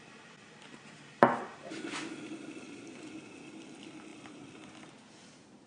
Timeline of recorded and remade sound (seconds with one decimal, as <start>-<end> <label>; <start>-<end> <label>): 0.0-1.5 recorded; 1.5-3.0 remade; 3.0-4.1 recorded; 4.1-4.7 remade; 4.7-5.7 recorded